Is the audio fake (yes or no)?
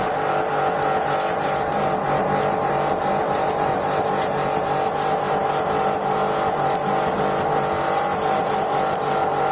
no